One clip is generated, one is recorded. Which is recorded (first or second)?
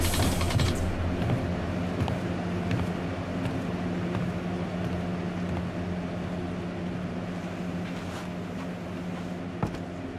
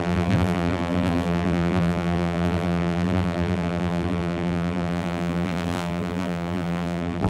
first